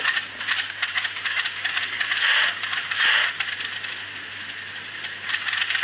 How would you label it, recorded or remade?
recorded